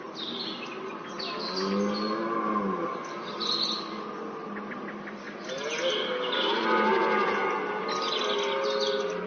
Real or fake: real